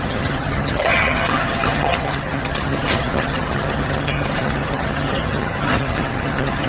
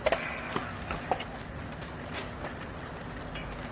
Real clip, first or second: second